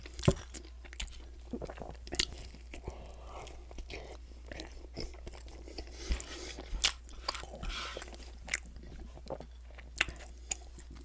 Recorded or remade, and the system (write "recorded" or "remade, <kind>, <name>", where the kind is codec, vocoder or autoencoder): recorded